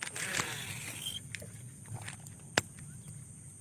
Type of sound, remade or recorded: recorded